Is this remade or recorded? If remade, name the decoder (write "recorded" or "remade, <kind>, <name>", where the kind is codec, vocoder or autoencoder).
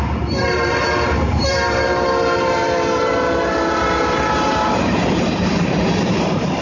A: remade, vocoder, BigVGAN v2